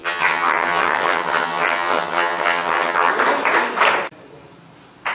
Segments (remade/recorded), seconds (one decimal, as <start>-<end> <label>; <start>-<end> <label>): 0.0-3.1 remade; 3.1-5.1 recorded